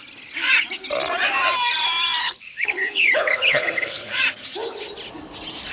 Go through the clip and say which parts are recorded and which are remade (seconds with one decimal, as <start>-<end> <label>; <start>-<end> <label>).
0.0-2.2 recorded; 2.2-4.1 remade; 4.1-5.7 recorded